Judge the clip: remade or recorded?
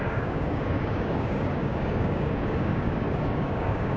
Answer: remade